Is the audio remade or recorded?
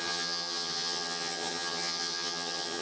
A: remade